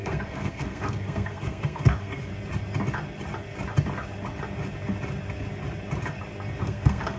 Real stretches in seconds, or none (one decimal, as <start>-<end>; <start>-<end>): 2.3-6.6